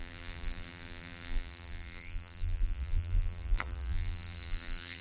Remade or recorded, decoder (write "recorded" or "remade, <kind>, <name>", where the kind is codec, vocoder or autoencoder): remade, vocoder, BigVGAN v2